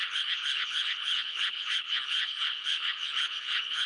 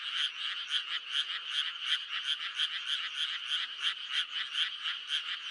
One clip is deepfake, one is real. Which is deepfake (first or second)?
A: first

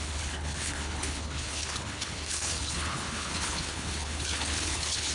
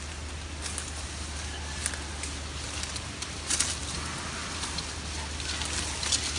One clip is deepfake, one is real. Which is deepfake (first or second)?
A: first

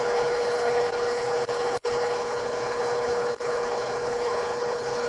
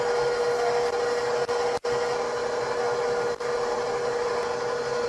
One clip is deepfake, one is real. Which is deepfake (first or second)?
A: first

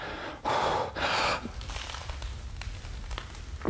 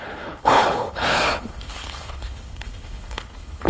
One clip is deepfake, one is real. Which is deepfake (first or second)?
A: second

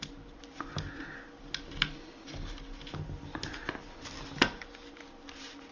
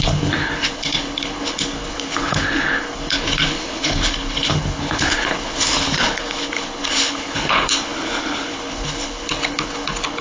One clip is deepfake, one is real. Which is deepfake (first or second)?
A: second